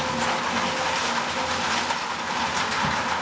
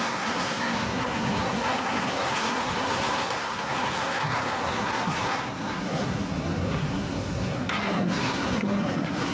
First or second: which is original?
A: first